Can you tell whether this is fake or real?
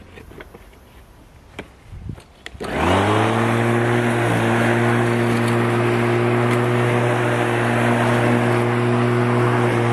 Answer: real